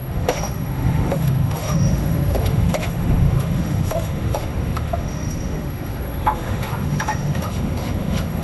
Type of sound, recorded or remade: remade